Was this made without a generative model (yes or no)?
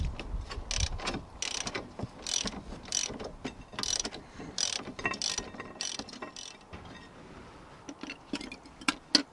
yes